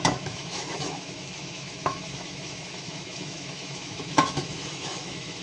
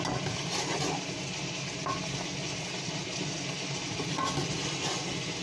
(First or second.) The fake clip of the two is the first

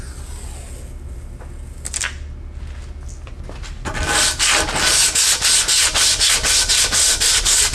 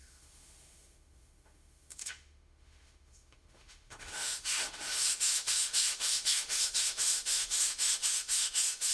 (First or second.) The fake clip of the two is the second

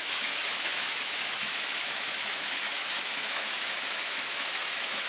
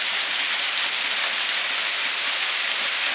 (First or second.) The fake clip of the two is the first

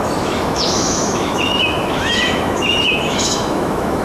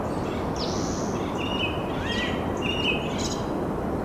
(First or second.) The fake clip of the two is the first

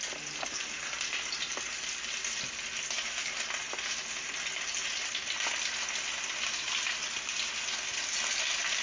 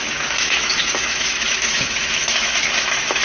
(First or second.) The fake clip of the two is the second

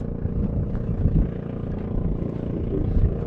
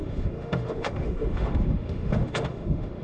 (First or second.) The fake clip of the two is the second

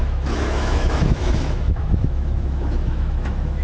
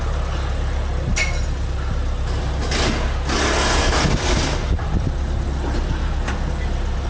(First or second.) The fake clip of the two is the first